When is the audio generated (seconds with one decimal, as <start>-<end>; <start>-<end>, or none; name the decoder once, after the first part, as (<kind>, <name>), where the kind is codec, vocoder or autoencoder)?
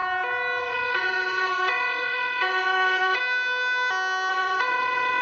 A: 0.6-3.2 (vocoder, WaveNeXt); 4.3-5.2